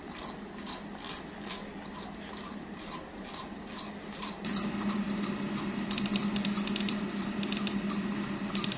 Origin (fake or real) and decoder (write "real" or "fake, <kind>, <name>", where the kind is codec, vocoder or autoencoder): real